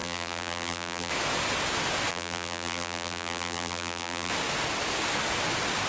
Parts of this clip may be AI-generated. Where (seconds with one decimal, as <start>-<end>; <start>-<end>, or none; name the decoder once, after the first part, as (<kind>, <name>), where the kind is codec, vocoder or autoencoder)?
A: 0.0-1.1 (vocoder, BigVGAN v2); 2.1-4.3